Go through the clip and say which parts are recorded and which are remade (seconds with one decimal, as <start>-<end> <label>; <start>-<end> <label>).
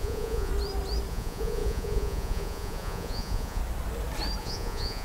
0.0-0.5 remade; 0.5-1.1 recorded; 1.1-3.6 remade; 3.6-4.4 recorded; 4.4-5.0 remade